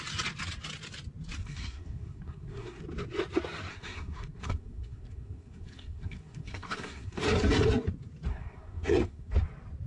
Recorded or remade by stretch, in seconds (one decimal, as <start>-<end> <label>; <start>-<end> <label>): 0.0-1.4 recorded; 1.4-2.8 remade; 2.8-3.7 recorded; 3.7-7.2 remade; 7.2-8.3 recorded; 8.3-9.3 remade; 9.3-9.9 recorded